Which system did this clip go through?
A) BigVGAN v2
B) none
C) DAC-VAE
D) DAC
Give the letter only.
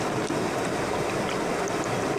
B